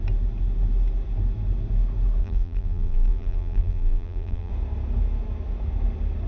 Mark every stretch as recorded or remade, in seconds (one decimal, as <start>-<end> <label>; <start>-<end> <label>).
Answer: 0.0-2.2 recorded; 2.2-4.5 remade; 4.5-6.3 recorded